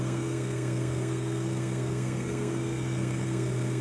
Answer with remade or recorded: remade